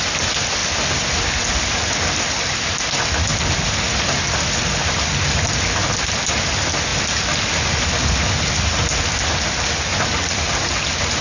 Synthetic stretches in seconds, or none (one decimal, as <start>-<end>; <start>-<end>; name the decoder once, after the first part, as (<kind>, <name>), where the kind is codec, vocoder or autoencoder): none